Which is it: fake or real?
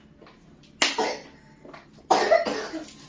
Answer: real